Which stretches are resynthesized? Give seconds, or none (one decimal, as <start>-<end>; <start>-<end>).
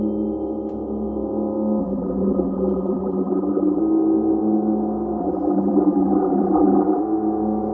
1.8-3.8; 5.2-7.0